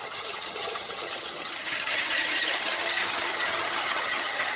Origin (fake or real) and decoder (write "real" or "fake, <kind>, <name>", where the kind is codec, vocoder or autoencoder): fake, vocoder, HiFi-GAN